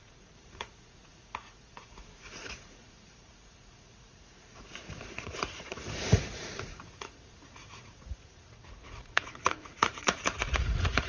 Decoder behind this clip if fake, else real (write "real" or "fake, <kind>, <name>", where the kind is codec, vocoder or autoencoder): fake, vocoder, Vocos